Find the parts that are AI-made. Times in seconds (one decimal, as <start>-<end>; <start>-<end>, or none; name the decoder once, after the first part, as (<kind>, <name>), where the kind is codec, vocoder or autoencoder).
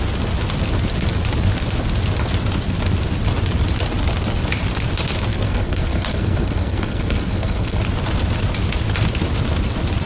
5.3-7.8 (codec, SNAC)